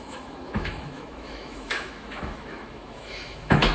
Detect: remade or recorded remade